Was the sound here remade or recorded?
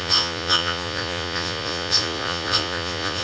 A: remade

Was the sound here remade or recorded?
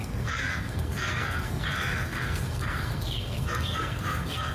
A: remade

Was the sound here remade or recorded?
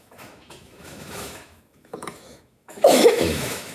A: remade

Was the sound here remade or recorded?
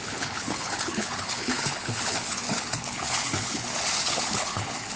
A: remade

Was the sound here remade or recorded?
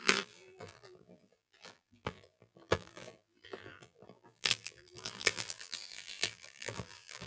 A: remade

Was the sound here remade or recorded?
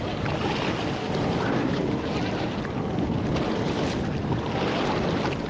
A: recorded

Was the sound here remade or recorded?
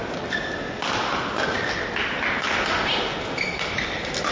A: recorded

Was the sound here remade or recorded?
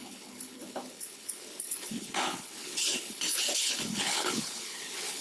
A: remade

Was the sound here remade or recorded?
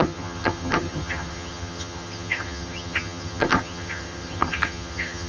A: remade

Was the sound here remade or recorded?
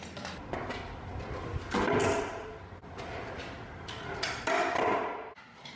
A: recorded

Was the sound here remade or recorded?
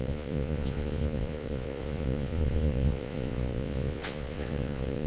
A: remade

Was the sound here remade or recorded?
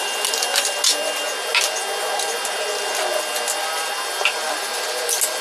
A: recorded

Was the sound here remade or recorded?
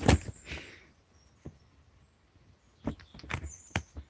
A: recorded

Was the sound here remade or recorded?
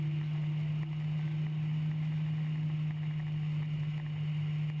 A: recorded